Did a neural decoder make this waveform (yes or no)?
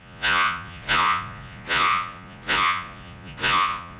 yes